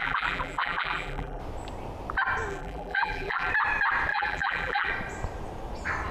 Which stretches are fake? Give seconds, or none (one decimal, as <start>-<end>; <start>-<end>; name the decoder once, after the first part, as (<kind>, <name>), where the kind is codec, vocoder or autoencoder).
0.0-1.4 (vocoder, BigVGAN v2); 2.5-3.5; 4.1-4.9